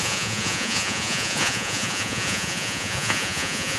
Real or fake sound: fake